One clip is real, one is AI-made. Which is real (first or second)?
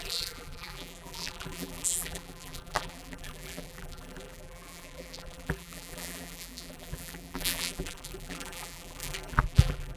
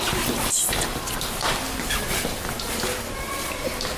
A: second